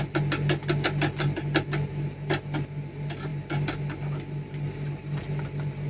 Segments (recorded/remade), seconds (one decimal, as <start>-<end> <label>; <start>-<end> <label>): 0.0-5.9 recorded